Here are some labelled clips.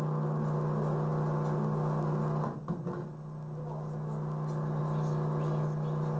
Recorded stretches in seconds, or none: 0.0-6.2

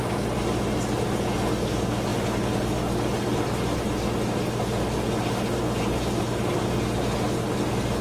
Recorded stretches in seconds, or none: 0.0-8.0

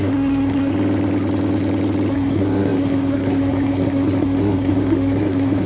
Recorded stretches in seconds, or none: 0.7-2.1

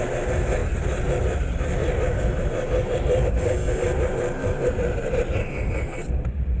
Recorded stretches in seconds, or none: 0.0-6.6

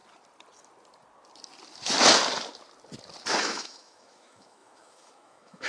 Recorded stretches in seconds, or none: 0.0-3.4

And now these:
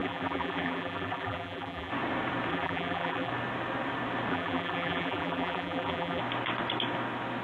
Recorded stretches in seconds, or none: 1.9-2.5; 3.3-4.3; 6.2-7.4

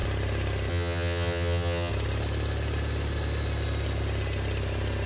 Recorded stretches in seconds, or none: 0.0-0.7; 1.9-5.1